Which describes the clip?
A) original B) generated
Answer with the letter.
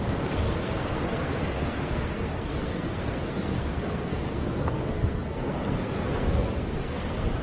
B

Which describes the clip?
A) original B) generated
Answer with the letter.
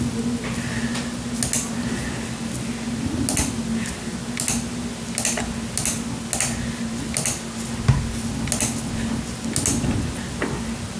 A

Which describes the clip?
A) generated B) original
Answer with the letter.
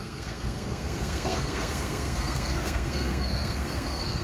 A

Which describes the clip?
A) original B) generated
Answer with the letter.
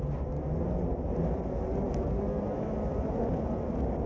A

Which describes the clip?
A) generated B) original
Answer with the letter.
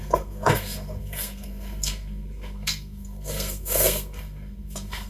A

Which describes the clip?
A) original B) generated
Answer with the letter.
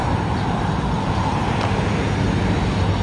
A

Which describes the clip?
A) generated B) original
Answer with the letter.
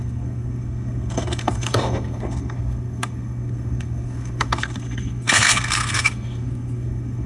A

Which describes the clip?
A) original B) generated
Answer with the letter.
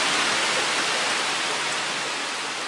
A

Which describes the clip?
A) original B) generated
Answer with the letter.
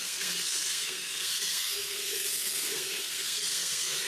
B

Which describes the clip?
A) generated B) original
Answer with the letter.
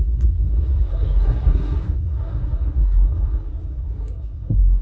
A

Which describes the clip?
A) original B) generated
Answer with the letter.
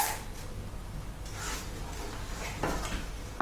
A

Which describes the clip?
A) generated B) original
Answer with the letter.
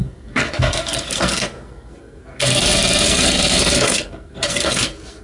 A